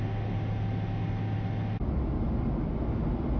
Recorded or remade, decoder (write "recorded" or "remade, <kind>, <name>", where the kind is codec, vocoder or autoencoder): recorded